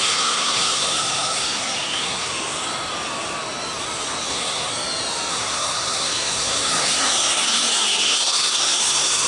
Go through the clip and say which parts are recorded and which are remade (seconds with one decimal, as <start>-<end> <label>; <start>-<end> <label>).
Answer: 0.0-2.3 remade; 2.3-4.3 recorded; 4.3-4.7 remade; 4.7-5.3 recorded; 5.3-9.3 remade